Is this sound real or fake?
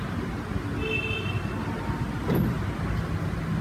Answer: real